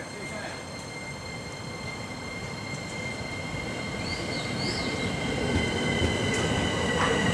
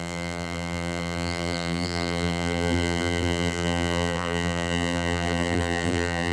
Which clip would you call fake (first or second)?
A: second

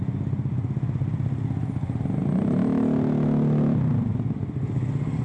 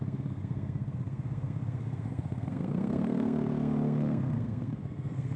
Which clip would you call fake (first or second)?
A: second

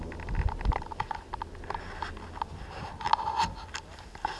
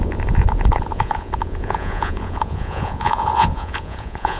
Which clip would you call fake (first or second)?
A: second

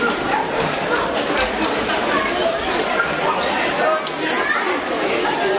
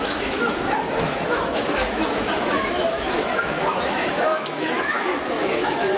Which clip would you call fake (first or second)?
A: second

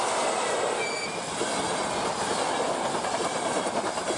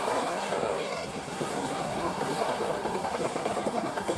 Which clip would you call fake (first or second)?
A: second